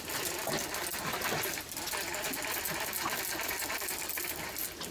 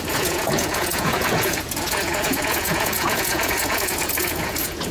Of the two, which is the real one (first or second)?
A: first